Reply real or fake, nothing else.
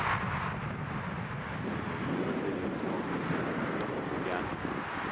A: real